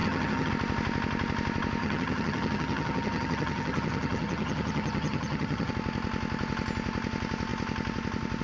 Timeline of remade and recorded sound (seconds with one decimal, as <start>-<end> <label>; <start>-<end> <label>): 0.0-0.5 remade; 0.5-1.8 recorded; 1.8-5.7 remade; 5.7-8.4 recorded